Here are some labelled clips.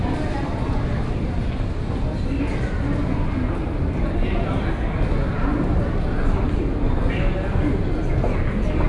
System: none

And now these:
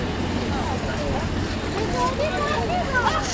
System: none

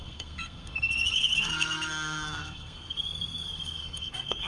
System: codec, SNAC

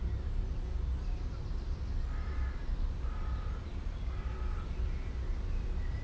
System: none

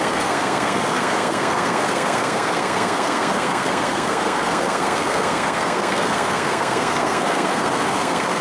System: codec, SNAC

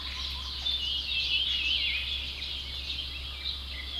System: none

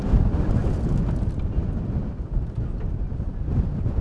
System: none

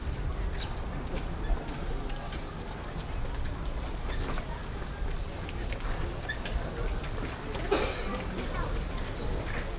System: none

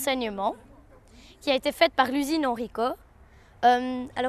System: none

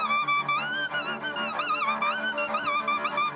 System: none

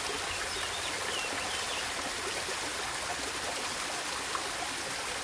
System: none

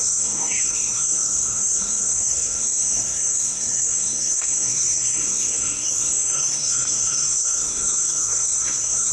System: codec, SNAC